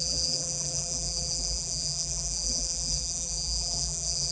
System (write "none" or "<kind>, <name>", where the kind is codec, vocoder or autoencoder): vocoder, BigVGAN v2